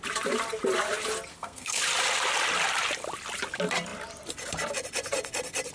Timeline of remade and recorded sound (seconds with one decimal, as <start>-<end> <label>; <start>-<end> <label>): 0.0-1.3 recorded; 1.3-1.8 remade; 1.8-5.7 recorded

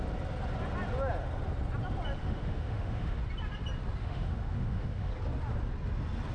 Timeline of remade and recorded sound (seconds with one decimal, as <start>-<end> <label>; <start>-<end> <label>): 0.0-2.2 recorded; 2.2-3.2 remade; 3.2-4.0 recorded; 4.0-5.1 remade; 5.1-6.3 recorded

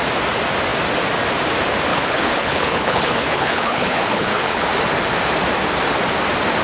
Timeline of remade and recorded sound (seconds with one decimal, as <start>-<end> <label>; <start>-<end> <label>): 0.0-1.9 recorded; 1.9-4.7 remade; 4.7-6.6 recorded